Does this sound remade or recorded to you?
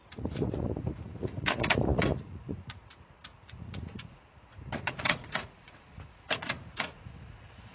remade